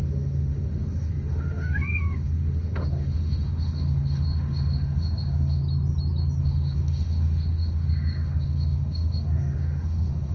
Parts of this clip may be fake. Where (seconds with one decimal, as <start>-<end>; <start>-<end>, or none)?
0.0-5.6; 6.4-10.3

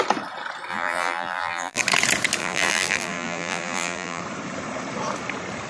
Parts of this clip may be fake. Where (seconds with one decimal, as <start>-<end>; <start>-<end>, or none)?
0.7-1.8; 2.4-4.2

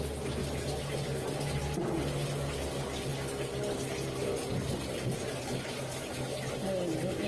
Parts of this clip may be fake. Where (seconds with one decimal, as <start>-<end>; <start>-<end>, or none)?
none

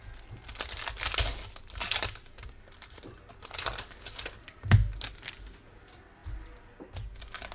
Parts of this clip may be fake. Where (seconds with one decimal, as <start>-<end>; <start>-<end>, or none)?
none

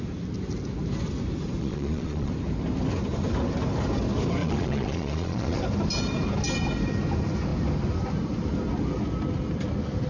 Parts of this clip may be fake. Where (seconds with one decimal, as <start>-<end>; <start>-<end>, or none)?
1.6-2.3; 4.4-5.6

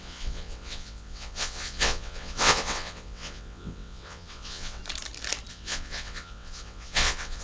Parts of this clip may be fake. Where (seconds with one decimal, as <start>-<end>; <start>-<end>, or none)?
0.0-4.8; 5.5-7.4